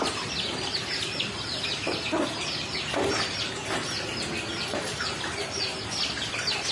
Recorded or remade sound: recorded